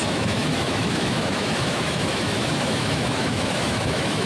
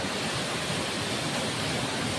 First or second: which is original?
second